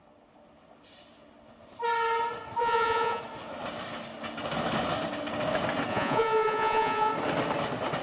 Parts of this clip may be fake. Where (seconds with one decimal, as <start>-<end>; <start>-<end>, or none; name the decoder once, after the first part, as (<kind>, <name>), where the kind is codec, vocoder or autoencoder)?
2.6-3.2 (vocoder, Vocos); 5.9-7.1